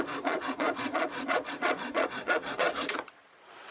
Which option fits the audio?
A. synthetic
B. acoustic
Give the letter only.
A